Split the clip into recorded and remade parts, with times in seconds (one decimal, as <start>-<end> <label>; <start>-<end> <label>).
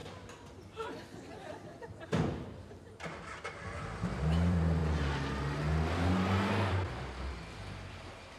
0.0-1.8 recorded; 1.8-4.8 remade; 4.8-7.3 recorded; 7.3-8.4 remade